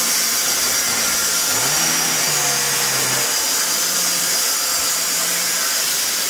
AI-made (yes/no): no